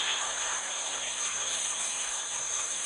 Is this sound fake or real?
fake